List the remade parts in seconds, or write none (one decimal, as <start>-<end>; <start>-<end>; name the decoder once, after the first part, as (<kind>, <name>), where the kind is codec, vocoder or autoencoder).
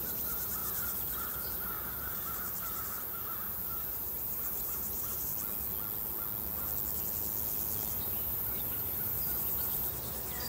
0.0-5.3 (vocoder, BigVGAN v2); 7.9-10.5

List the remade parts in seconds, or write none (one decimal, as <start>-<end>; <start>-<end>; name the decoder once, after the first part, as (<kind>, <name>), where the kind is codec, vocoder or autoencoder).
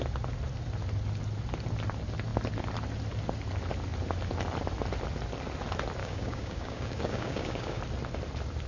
6.0-7.8 (codec, DAC)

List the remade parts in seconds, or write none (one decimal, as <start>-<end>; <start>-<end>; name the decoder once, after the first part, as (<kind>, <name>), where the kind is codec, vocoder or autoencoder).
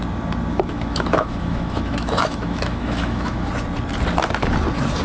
0.5-3.5 (autoencoder, DAC-VAE)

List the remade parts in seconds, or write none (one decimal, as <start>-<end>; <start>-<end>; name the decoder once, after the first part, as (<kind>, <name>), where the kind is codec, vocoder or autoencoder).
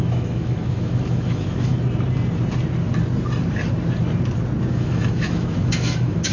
0.0-1.7 (autoencoder, DAC-VAE); 4.7-6.3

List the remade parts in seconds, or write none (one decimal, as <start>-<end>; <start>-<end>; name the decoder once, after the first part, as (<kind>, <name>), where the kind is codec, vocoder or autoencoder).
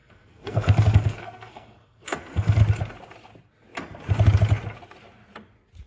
0.0-2.6 (codec, SNAC)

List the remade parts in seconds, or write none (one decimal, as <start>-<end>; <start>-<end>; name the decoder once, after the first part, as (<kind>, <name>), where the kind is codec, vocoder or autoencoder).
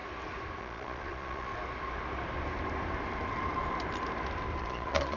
0.6-1.5 (vocoder, Vocos); 4.6-5.2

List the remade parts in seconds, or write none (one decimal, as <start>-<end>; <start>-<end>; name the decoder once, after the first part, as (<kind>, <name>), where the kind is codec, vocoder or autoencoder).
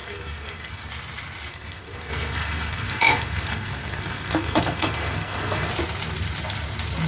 0.0-0.9 (codec, SNAC); 1.5-5.7